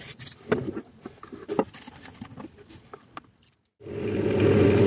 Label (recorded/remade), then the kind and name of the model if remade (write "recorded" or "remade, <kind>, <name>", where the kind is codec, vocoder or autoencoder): recorded